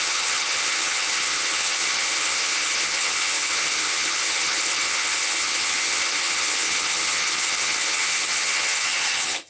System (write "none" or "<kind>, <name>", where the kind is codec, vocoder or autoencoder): vocoder, HiFi-GAN